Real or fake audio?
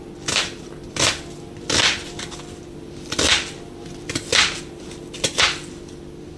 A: real